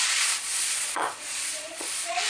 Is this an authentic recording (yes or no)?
no